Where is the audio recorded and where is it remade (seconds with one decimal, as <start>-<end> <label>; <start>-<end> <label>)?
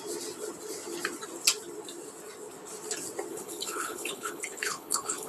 0.0-3.3 recorded; 3.3-5.3 remade